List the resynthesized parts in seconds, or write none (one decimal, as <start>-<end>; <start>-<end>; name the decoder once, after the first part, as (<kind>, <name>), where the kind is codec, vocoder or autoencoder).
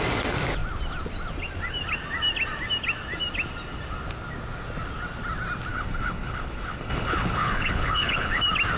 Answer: 5.7-8.4 (codec, HILCodec)